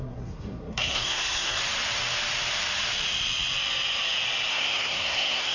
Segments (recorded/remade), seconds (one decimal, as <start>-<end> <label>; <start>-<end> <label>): 0.0-1.6 remade; 1.6-4.5 recorded; 4.5-5.5 remade